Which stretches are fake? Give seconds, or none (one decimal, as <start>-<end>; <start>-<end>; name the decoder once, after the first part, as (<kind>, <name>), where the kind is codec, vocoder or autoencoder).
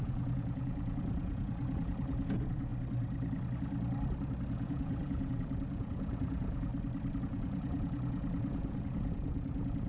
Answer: 0.0-2.7 (vocoder, Vocos); 4.5-6.7; 7.2-9.9